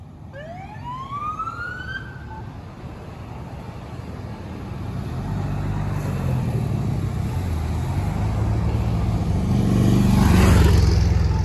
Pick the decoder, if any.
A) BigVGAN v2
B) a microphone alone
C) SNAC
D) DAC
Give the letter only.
B